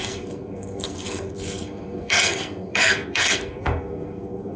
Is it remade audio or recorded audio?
remade